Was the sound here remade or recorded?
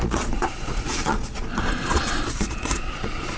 remade